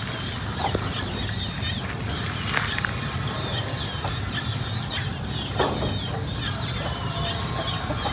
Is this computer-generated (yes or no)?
no